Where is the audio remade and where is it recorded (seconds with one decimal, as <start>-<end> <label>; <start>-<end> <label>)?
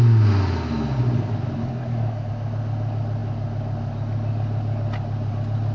0.0-1.6 recorded; 1.6-2.3 remade; 2.3-5.7 recorded